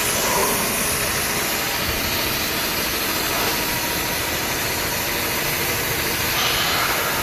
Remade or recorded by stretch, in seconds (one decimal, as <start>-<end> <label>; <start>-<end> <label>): 0.0-5.6 recorded; 5.6-7.2 remade